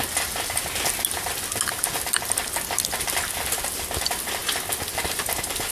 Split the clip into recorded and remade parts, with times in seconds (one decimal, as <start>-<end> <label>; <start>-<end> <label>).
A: 0.0-5.7 recorded

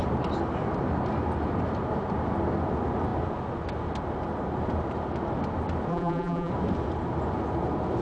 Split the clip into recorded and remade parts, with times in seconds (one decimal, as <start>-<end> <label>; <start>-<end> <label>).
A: 0.0-5.9 recorded; 5.9-6.5 remade; 6.5-8.0 recorded